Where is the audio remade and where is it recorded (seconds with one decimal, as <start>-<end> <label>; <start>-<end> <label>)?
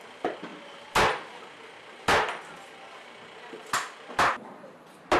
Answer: 0.0-5.2 recorded